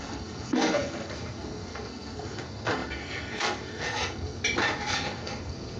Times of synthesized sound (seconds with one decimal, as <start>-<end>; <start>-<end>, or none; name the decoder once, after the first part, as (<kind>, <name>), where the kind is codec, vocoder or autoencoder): 0.0-4.4 (codec, SNAC); 4.9-5.8